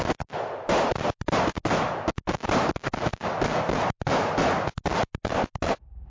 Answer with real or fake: real